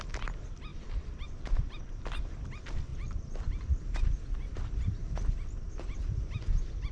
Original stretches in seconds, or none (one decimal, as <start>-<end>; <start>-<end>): 0.0-0.7; 1.9-2.9; 3.8-6.9